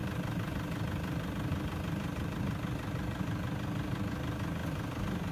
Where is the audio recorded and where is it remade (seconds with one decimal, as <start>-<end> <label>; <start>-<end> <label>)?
0.0-2.4 remade; 2.4-4.6 recorded; 4.6-5.3 remade